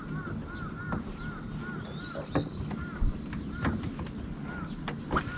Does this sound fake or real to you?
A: real